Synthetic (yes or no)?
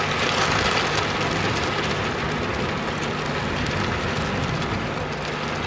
no